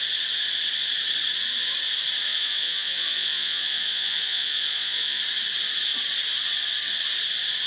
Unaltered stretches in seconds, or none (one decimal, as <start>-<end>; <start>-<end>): 0.0-2.3; 5.2-7.7